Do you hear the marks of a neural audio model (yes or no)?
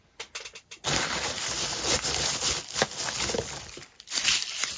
no